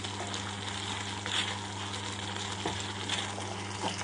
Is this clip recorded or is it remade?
recorded